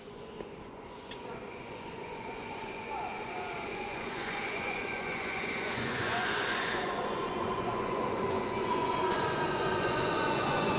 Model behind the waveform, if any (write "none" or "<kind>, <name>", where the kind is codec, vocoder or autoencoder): vocoder, Vocos